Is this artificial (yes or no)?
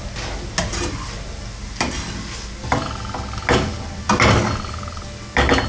no